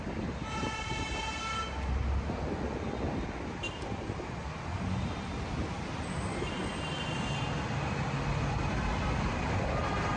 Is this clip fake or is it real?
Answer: real